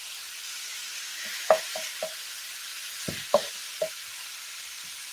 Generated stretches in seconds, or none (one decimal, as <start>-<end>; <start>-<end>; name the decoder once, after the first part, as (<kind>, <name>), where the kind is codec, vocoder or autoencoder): 1.1-1.6 (autoencoder, DAC-VAE)